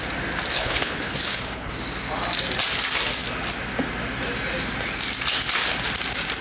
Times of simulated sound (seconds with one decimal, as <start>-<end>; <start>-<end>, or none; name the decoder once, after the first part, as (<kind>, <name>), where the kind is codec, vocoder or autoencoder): 0.5-1.7 (codec, HILCodec)